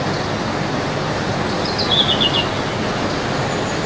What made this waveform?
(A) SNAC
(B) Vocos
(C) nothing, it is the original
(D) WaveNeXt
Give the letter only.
C